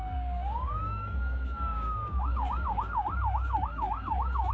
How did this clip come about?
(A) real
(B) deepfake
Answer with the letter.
B